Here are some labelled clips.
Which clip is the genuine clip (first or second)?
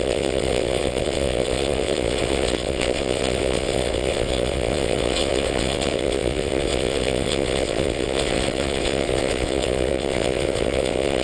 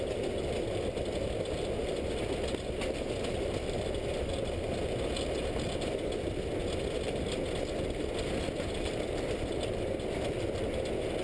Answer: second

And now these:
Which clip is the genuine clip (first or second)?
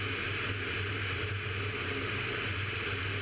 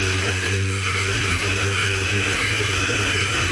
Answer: first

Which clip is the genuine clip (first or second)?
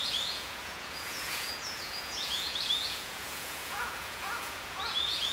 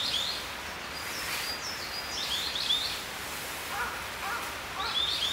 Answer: second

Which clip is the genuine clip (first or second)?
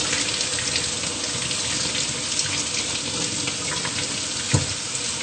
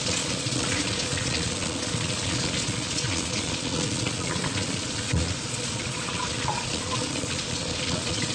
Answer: first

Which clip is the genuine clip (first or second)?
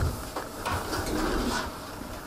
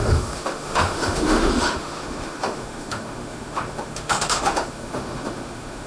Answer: first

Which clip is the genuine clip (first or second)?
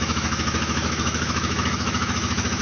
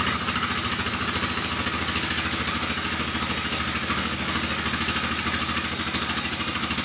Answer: second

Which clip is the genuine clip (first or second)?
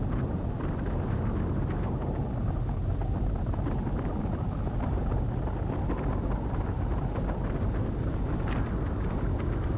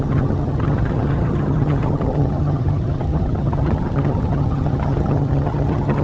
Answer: first